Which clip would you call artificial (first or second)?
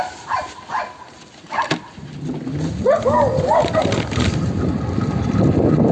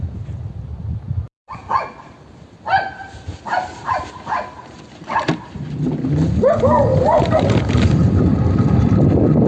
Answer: second